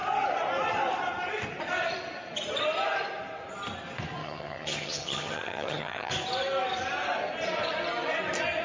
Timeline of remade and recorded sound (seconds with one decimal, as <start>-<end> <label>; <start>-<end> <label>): 0.0-4.2 recorded; 4.2-6.1 remade; 6.1-8.6 recorded